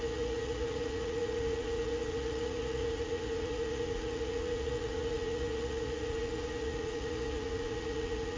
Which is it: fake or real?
fake